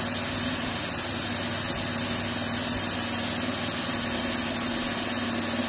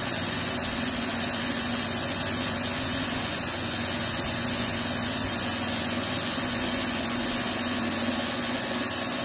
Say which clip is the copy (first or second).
second